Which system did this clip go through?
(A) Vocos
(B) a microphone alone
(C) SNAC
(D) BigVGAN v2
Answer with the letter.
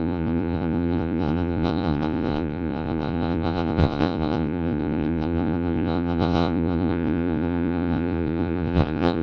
A